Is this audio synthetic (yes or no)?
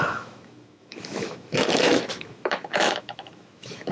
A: yes